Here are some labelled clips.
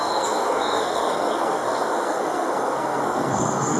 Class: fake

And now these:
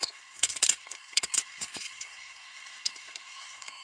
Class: fake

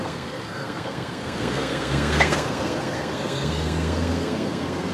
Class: fake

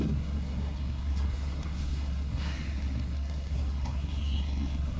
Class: fake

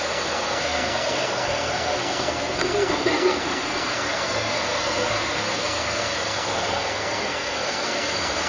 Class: fake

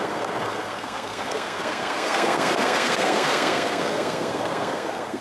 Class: fake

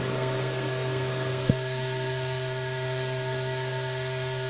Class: fake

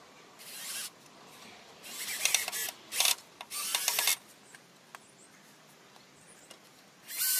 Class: real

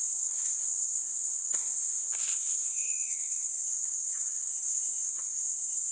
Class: fake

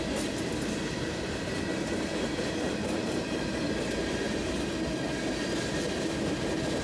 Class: real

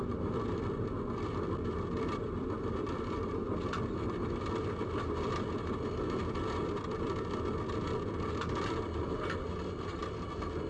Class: real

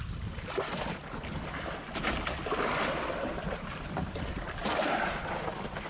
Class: real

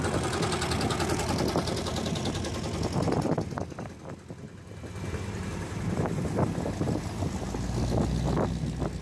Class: real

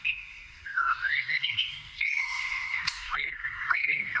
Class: fake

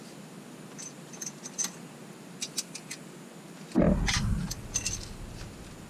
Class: real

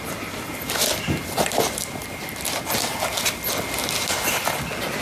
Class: real